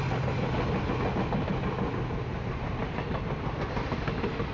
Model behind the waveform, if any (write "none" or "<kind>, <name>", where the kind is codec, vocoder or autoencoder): none